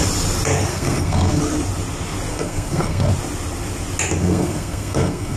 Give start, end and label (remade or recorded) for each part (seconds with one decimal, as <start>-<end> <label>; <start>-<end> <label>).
0.0-0.7 recorded; 0.7-1.4 remade; 1.4-2.3 recorded; 2.3-3.1 remade; 3.1-4.2 recorded; 4.2-5.4 remade

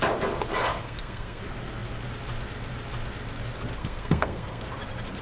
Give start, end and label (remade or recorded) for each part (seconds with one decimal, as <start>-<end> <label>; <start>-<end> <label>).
0.0-0.7 recorded; 0.7-1.4 remade; 1.4-3.8 recorded; 3.8-4.6 remade; 4.6-5.2 recorded